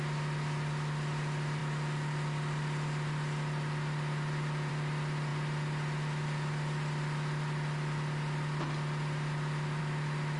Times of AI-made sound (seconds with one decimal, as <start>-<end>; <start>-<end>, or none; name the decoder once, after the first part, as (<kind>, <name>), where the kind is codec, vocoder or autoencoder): none